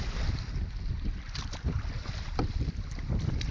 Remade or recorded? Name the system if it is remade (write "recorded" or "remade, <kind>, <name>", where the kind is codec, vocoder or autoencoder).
recorded